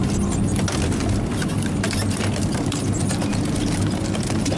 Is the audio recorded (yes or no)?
yes